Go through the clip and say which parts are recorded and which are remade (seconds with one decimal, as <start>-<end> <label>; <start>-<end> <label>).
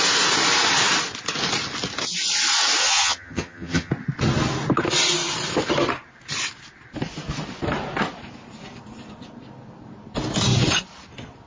0.0-2.8 recorded; 2.8-3.9 remade; 3.9-11.5 recorded